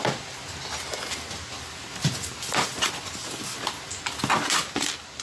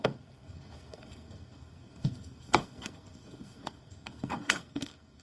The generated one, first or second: second